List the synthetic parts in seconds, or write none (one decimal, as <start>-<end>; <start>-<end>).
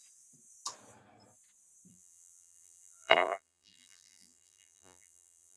1.9-5.6